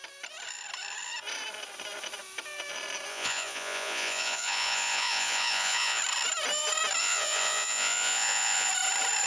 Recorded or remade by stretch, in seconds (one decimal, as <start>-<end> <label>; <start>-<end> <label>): 0.0-3.1 recorded; 3.1-6.0 remade; 6.0-7.0 recorded; 7.0-8.7 remade; 8.7-9.3 recorded